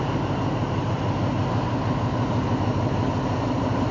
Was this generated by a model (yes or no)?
no